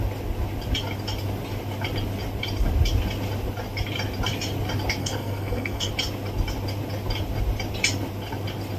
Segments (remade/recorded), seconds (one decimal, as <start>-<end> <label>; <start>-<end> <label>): 0.0-5.0 recorded; 5.0-5.9 remade; 5.9-8.8 recorded